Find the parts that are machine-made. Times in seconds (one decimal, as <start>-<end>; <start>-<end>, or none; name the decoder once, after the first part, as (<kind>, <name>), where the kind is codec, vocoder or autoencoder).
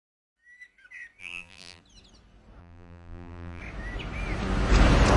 1.2-1.8 (vocoder, BigVGAN v2); 2.6-3.6